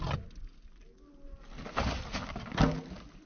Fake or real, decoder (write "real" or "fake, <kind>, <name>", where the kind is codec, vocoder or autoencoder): real